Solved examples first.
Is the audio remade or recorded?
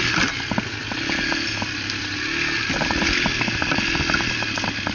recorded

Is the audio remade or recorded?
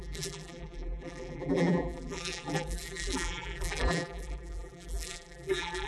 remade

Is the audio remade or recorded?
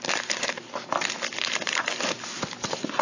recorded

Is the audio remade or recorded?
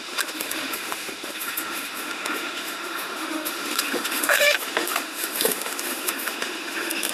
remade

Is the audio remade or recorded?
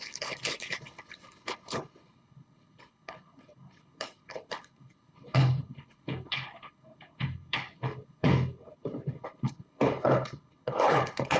remade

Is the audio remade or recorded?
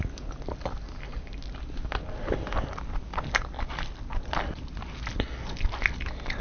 recorded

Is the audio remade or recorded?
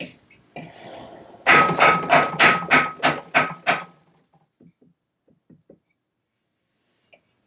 recorded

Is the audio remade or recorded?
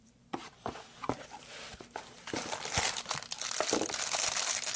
remade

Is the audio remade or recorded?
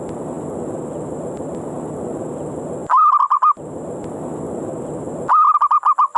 recorded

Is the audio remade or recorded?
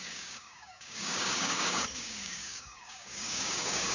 remade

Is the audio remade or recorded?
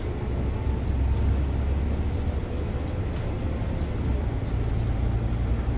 recorded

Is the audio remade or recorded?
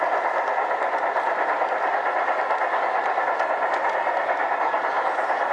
recorded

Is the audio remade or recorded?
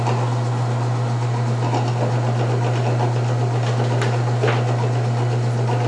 recorded